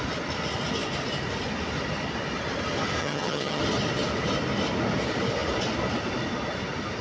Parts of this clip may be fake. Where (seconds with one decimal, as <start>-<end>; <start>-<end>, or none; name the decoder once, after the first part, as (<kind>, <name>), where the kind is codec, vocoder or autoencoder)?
3.0-3.6 (vocoder, HiFi-GAN)

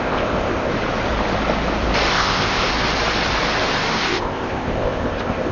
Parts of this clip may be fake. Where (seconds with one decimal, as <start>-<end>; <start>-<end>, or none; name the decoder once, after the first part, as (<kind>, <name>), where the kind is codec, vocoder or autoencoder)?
0.0-0.7 (codec, ZipCodec); 2.1-2.7; 4.0-5.5

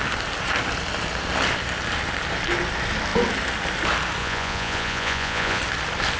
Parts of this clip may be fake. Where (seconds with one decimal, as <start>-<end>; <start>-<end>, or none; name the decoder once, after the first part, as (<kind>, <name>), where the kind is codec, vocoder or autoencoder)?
4.2-5.6 (vocoder, Vocos)

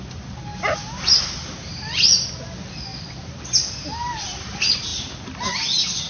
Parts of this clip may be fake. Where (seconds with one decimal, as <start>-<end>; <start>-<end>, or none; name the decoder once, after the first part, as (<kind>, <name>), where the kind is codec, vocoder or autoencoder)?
none

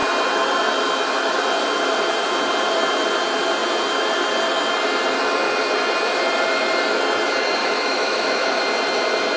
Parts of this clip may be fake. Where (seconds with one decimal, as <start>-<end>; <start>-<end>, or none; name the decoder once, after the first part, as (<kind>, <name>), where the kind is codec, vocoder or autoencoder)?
7.6-8.6 (autoencoder, DAC-VAE)

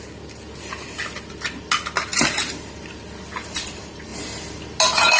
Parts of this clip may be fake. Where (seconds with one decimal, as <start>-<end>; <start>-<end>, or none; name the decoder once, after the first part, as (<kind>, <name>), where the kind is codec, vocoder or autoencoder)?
none

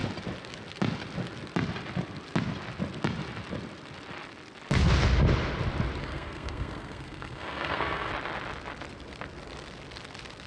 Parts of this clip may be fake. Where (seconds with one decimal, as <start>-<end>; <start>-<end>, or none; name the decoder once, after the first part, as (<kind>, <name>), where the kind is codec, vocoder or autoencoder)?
6.0-8.1 (codec, SNAC)